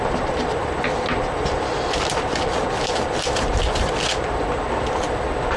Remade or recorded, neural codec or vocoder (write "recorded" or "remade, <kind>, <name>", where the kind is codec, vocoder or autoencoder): recorded